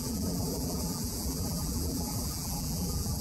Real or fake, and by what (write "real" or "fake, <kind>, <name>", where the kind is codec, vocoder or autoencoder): fake, vocoder, BigVGAN v2